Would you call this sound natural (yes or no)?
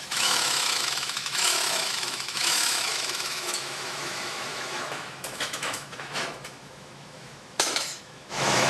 no